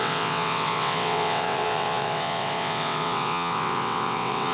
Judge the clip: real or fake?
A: fake